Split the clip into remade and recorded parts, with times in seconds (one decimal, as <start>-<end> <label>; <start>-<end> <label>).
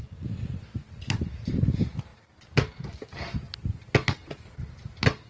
0.0-5.3 recorded